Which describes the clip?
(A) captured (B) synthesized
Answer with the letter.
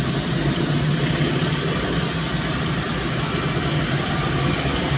A